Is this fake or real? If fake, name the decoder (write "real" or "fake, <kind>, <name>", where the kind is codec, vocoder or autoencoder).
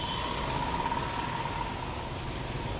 real